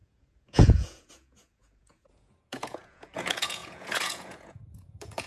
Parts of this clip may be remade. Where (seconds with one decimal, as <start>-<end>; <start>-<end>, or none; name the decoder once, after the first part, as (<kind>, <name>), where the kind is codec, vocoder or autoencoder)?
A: 0.0-5.3 (vocoder, Vocos)